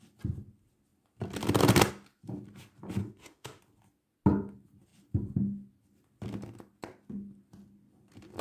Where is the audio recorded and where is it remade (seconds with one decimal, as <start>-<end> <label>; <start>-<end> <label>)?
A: 0.0-3.0 recorded; 3.0-3.6 remade; 3.6-8.4 recorded